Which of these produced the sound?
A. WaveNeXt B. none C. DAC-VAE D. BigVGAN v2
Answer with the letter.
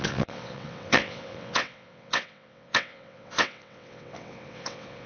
A